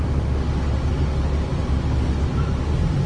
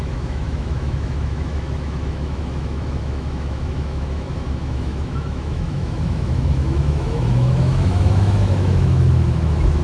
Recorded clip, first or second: first